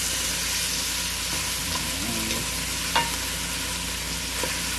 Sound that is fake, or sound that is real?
real